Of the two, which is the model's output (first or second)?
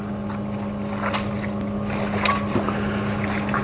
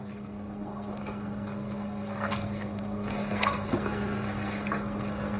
second